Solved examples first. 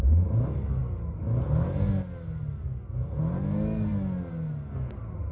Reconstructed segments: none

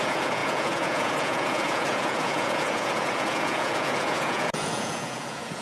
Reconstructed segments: 0.0-5.6 (vocoder, Vocos)

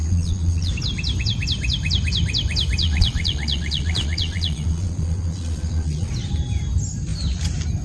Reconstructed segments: 0.0-0.7 (vocoder, Vocos); 2.8-6.1

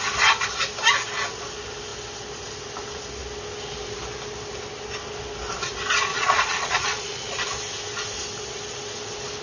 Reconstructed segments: 6.1-7.3 (vocoder, Vocos)

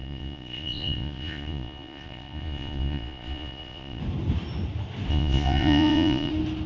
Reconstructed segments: 0.0-4.0 (vocoder, Vocos); 5.1-6.3